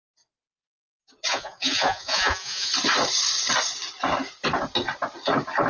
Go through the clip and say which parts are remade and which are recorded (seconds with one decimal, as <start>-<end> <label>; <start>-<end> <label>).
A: 0.0-1.3 recorded; 1.3-2.7 remade; 2.7-5.7 recorded